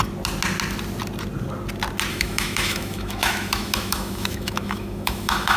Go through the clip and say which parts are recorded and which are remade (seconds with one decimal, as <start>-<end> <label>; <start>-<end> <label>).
0.0-2.1 recorded; 2.1-5.6 remade